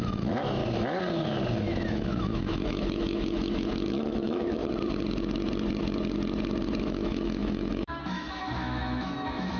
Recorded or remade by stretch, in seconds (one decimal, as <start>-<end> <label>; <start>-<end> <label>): 0.0-0.6 remade; 0.6-1.6 recorded; 1.6-4.6 remade; 4.6-6.8 recorded; 6.8-9.6 remade